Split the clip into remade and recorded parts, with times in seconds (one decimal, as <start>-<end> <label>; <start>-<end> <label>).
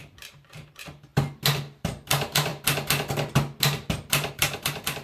0.0-1.1 remade; 1.1-1.8 recorded; 1.8-2.5 remade; 2.5-4.3 recorded; 4.3-5.0 remade